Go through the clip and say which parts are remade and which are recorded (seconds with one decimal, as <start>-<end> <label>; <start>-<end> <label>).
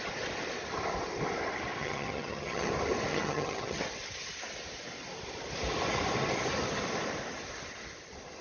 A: 0.0-1.8 recorded; 1.8-2.7 remade; 2.7-3.1 recorded; 3.1-3.8 remade; 3.8-8.4 recorded